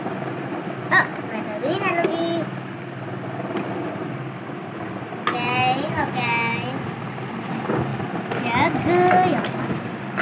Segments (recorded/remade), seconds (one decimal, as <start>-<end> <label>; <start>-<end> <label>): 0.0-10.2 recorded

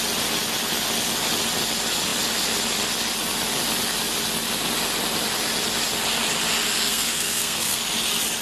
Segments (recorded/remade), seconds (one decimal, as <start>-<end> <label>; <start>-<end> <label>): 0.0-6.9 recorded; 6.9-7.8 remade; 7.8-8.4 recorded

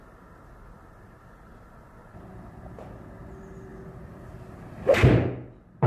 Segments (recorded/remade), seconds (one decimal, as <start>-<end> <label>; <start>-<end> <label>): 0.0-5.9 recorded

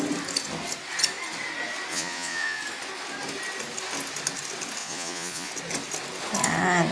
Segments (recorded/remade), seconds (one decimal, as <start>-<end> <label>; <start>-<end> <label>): 0.0-1.9 recorded; 1.9-2.6 remade; 2.6-4.8 recorded; 4.8-5.5 remade; 5.5-6.9 recorded

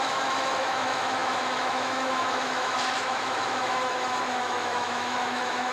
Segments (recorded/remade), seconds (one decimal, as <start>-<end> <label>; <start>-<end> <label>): 0.0-5.7 remade